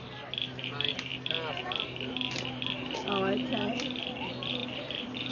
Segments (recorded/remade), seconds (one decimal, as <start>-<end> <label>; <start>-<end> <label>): 0.0-4.6 recorded; 4.6-5.3 remade